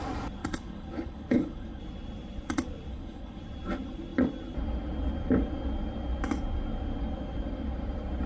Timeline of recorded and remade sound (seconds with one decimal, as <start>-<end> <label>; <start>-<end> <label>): 0.0-0.4 recorded; 0.4-1.8 remade; 1.8-2.9 recorded; 2.9-3.4 remade; 3.4-8.3 recorded